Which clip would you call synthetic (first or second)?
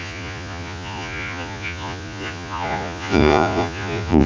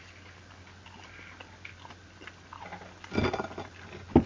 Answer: first